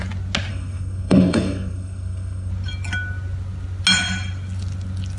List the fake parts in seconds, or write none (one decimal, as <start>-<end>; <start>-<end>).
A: 0.5-2.5